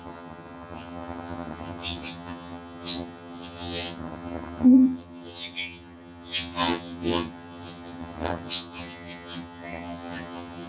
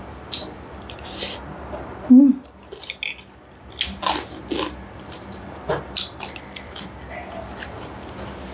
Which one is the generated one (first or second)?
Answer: first